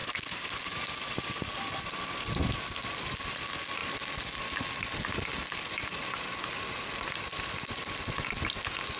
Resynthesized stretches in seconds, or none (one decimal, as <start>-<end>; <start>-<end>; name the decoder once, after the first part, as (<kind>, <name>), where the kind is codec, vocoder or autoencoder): none